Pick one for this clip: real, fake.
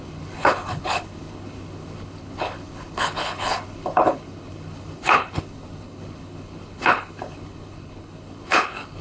fake